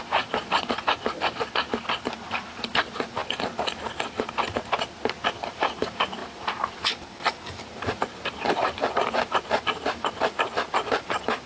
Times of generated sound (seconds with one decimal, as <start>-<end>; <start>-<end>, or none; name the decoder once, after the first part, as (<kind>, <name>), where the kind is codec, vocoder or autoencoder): 0.0-0.4 (vocoder, BigVGAN v2); 2.0-3.2; 5.5-11.5